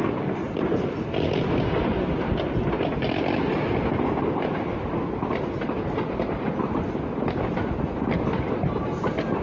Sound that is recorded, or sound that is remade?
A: recorded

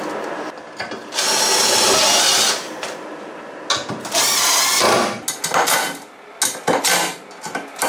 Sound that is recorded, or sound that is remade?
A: recorded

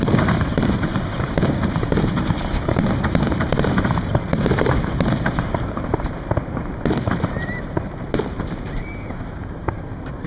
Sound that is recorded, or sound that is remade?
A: remade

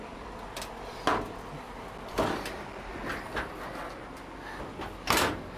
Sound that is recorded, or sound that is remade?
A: recorded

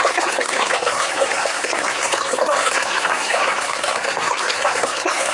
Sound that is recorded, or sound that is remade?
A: remade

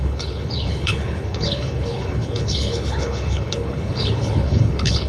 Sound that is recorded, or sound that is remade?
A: remade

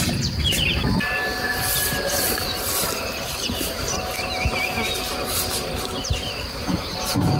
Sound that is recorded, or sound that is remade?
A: recorded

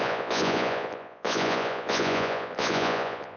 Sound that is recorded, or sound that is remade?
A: remade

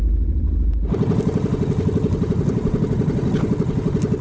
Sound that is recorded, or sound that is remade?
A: recorded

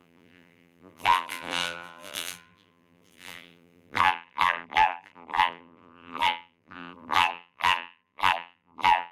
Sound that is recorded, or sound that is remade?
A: remade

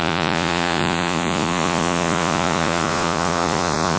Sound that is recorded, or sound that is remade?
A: remade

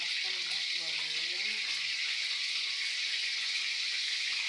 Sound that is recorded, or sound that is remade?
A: remade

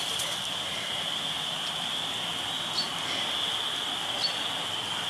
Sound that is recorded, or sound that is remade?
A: recorded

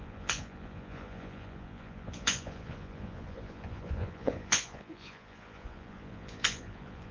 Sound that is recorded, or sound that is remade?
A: remade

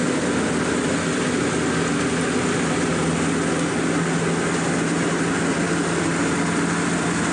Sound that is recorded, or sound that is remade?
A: recorded